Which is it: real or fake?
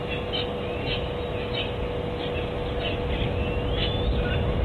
real